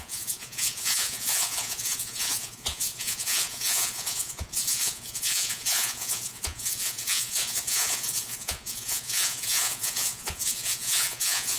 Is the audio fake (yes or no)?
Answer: yes